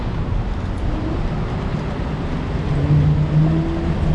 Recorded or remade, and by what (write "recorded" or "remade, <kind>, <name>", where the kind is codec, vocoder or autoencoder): recorded